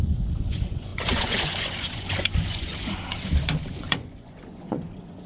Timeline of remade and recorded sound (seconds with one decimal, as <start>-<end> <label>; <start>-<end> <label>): 0.0-5.3 remade